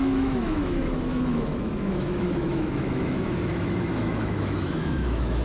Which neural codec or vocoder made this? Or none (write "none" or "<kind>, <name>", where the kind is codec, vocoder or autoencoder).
autoencoder, DAC-VAE